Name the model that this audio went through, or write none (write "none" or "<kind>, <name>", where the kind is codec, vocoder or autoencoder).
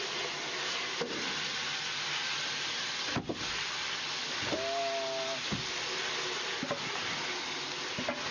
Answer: none